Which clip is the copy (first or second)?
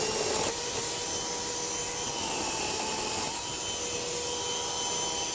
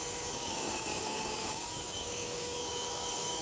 second